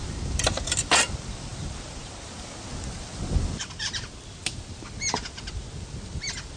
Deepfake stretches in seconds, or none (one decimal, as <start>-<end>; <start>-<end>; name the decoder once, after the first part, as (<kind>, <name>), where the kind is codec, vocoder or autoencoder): none